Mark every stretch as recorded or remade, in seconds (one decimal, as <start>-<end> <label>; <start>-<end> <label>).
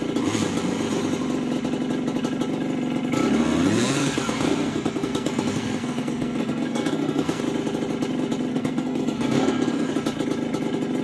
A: 0.0-4.0 recorded; 4.0-7.4 remade; 7.4-8.5 recorded; 8.5-9.9 remade; 9.9-11.0 recorded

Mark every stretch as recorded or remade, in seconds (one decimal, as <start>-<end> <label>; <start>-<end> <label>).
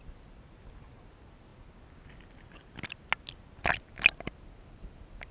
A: 0.0-5.3 recorded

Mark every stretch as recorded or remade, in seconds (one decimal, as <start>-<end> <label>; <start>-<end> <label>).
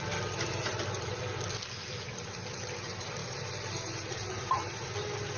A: 0.0-3.2 remade; 3.2-4.1 recorded; 4.1-5.4 remade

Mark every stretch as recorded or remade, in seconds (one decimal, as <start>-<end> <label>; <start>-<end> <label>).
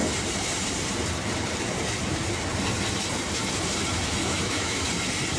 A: 0.0-4.2 recorded; 4.2-4.9 remade; 4.9-5.4 recorded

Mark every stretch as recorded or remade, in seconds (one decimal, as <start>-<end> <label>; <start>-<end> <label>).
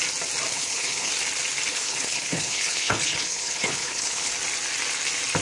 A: 0.0-0.5 recorded; 0.5-1.1 remade; 1.1-1.7 recorded; 1.7-4.3 remade; 4.3-5.4 recorded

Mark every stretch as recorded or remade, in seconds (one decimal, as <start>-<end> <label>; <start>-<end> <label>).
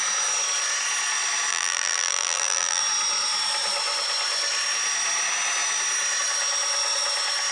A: 0.0-1.5 recorded; 1.5-2.8 remade; 2.8-7.5 recorded